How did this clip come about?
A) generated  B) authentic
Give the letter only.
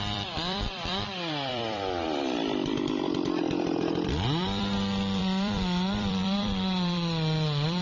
A